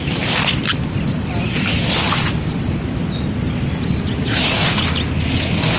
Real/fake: real